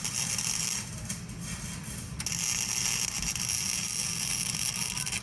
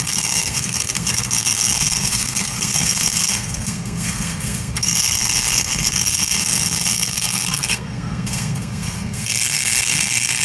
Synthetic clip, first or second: second